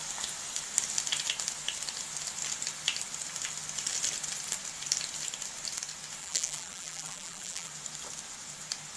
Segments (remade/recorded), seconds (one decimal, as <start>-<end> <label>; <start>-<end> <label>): 0.0-6.2 recorded; 6.2-7.7 remade; 7.7-9.0 recorded